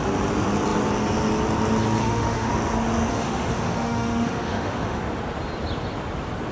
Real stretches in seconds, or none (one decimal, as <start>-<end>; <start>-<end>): 0.0-2.0; 2.5-3.1; 5.0-6.5